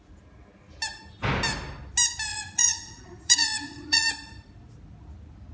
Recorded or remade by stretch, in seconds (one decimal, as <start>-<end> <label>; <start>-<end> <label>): 0.0-2.3 recorded; 2.3-4.1 remade; 4.1-5.5 recorded